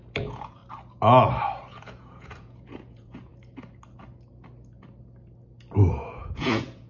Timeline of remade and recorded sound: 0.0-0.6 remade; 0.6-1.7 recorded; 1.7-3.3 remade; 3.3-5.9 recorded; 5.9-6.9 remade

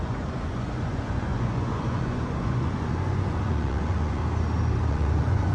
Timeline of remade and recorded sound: 0.0-4.2 remade; 4.2-4.9 recorded; 4.9-5.5 remade

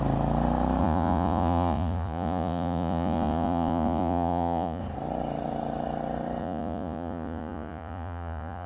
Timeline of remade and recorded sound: 0.0-0.8 recorded; 0.8-4.8 remade; 4.8-6.4 recorded; 6.4-8.7 remade